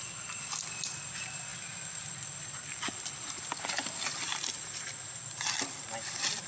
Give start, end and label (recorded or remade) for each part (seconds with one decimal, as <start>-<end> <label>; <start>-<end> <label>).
0.0-6.5 recorded